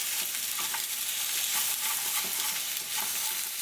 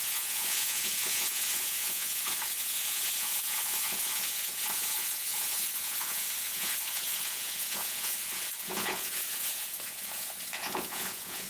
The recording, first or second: first